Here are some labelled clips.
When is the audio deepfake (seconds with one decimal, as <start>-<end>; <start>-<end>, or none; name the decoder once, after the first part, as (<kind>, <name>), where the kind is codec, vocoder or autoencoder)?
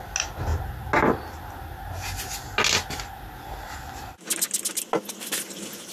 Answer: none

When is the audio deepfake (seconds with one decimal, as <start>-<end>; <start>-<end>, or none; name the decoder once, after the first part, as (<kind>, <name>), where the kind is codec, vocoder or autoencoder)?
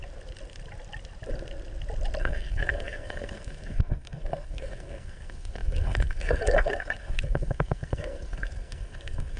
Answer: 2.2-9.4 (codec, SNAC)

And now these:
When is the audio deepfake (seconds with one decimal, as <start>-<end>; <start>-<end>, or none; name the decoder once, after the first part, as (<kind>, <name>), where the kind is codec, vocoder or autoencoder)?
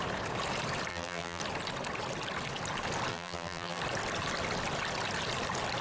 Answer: 0.9-1.4 (vocoder, BigVGAN v2); 3.1-3.8